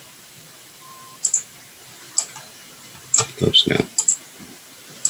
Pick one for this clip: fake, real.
fake